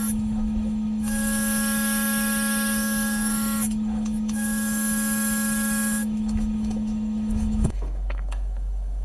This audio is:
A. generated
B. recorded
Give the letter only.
A